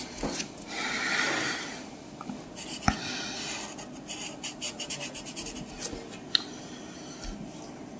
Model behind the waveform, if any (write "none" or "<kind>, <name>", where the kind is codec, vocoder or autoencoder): none